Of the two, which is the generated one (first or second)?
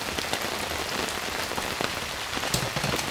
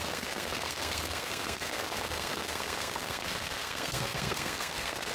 second